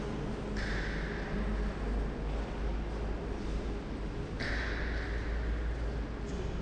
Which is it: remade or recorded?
recorded